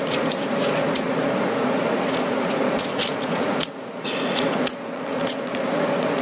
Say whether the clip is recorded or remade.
remade